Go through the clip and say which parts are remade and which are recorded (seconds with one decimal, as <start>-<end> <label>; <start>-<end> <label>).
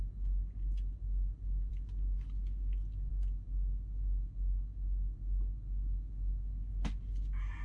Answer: 0.0-7.6 recorded